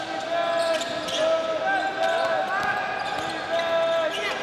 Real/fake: real